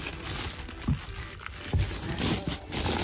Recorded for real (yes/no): yes